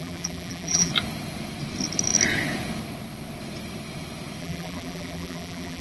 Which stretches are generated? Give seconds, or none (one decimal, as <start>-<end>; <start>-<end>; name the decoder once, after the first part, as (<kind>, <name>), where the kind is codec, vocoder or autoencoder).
0.0-0.9 (vocoder, BigVGAN v2); 4.4-5.8